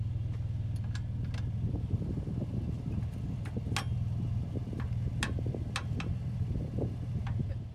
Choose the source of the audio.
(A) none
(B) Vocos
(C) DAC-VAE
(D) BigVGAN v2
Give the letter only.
A